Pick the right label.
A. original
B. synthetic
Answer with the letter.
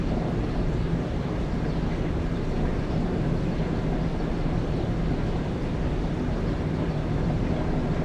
A